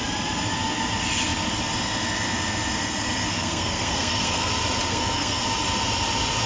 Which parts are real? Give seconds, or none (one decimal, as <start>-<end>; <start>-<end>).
0.0-3.3; 4.5-4.9; 5.4-6.5